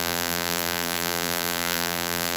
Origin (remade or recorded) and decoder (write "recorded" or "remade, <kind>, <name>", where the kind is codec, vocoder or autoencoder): remade, vocoder, BigVGAN v2